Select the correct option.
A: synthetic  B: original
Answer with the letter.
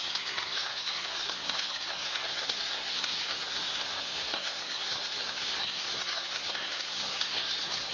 A